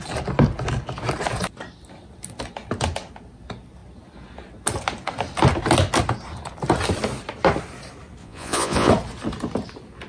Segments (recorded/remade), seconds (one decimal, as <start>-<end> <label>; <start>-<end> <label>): 0.0-8.2 recorded; 8.2-8.9 remade; 8.9-10.1 recorded